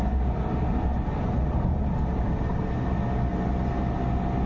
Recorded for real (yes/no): yes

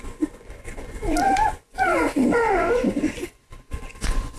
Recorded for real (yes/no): no